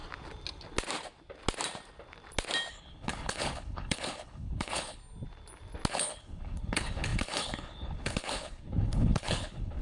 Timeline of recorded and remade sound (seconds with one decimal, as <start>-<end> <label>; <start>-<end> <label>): 0.0-2.7 recorded; 2.7-5.0 remade; 5.0-5.9 recorded; 5.9-9.8 remade